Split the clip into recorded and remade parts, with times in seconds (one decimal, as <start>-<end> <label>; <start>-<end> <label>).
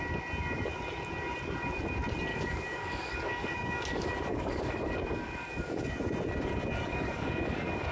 0.0-2.3 recorded; 2.3-5.8 remade; 5.8-6.9 recorded; 6.9-7.9 remade